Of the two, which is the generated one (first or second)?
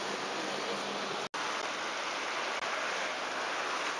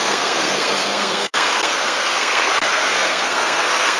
second